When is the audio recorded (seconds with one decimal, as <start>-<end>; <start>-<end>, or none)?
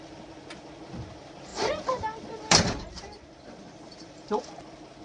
0.0-1.5; 4.5-5.0